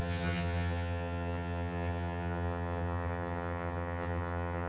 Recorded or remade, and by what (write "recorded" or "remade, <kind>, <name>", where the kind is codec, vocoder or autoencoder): remade, vocoder, HiFi-GAN